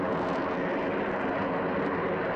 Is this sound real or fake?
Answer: real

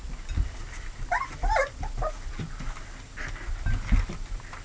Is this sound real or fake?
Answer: real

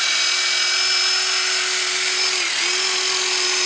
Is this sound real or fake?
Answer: real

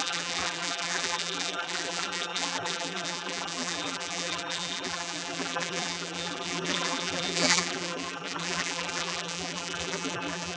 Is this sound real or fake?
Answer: fake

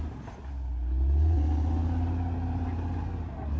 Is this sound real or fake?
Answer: real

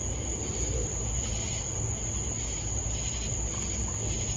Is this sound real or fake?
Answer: real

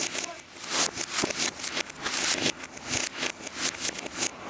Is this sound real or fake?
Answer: real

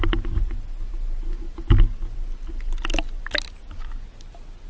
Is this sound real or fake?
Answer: real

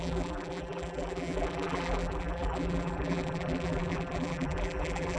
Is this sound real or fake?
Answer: fake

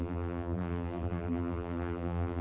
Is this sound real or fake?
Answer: fake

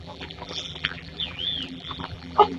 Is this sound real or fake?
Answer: fake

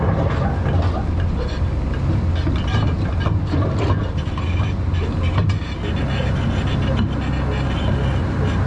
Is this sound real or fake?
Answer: real